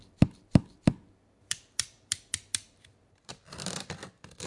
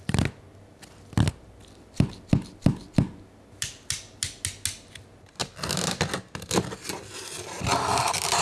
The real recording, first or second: second